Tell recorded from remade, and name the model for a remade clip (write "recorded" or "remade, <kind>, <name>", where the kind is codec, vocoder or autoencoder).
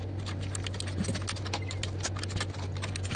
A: recorded